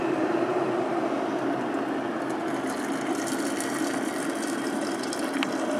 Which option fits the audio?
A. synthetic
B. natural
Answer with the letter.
B